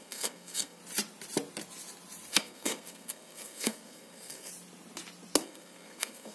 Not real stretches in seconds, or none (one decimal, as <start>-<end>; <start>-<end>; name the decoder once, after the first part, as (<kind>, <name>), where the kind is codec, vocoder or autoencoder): 0.0-0.8 (codec, SNAC); 2.3-4.5; 5.4-6.3